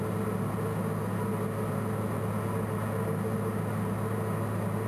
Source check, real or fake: real